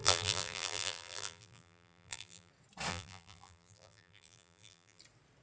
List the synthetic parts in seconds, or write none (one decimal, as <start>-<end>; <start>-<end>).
0.0-2.5; 2.9-5.0